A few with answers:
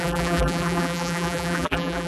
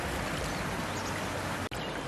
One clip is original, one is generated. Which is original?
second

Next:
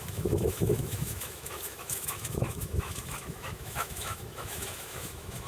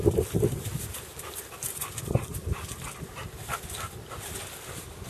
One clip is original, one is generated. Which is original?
second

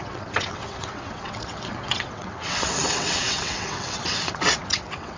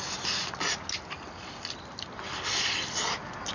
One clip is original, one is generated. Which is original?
second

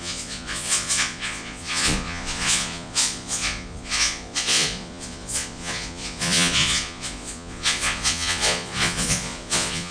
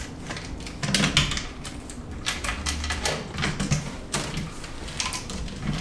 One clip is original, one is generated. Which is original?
second